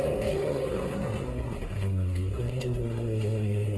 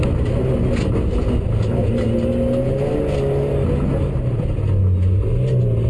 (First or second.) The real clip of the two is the second